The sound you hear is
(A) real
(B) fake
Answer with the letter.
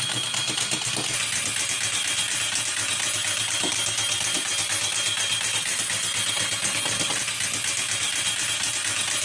A